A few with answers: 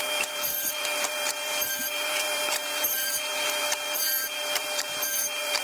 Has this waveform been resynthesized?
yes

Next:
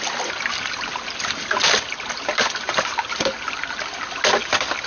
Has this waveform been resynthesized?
no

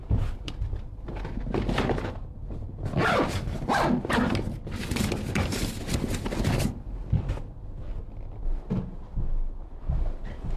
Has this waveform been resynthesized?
no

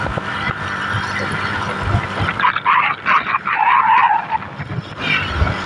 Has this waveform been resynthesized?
yes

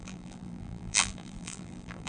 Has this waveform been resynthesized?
yes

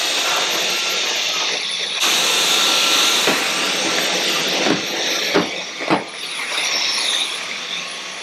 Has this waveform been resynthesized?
yes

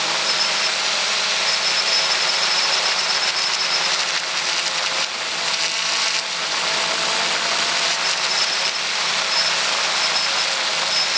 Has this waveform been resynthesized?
yes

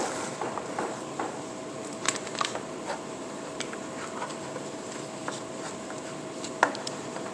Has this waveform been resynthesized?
yes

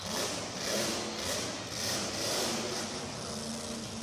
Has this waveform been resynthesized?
no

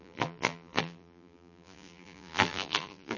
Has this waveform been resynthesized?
yes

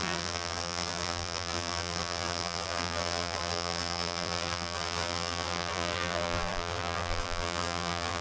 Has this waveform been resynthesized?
yes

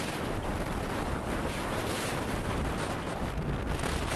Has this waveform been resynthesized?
no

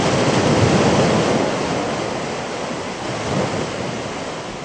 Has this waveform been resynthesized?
no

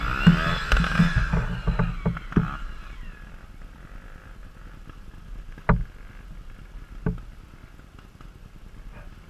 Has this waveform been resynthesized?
no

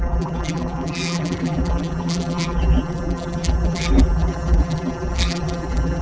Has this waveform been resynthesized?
yes